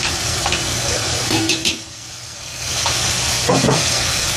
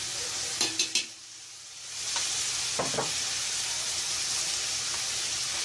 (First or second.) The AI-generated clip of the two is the first